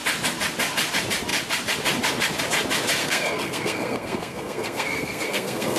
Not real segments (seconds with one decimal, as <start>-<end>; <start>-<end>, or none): 3.0-5.8